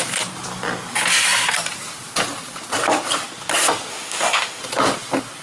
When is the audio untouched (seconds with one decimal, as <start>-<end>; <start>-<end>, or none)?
0.0-3.9; 4.6-5.4